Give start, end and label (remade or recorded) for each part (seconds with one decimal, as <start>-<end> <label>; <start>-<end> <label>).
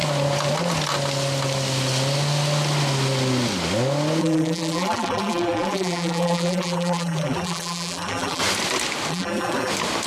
0.0-4.2 recorded; 4.2-8.4 remade; 8.4-9.1 recorded; 9.1-9.7 remade; 9.7-10.1 recorded